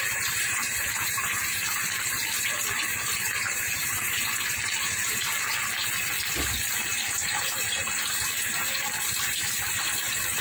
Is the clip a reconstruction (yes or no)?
no